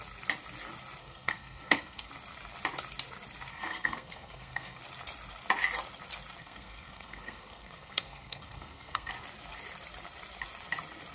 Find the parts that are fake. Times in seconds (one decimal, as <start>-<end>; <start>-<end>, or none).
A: 1.0-2.1; 3.5-4.8; 6.4-9.1